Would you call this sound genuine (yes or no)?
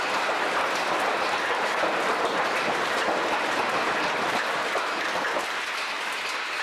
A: yes